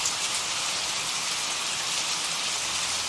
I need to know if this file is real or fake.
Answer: real